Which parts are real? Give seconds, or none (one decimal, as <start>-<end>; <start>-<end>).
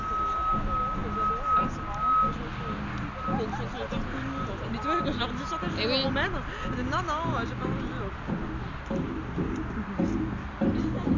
0.0-11.2